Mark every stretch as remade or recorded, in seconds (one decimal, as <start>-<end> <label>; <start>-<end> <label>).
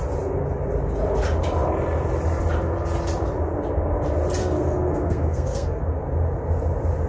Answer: 0.0-4.4 recorded; 4.4-5.8 remade; 5.8-7.1 recorded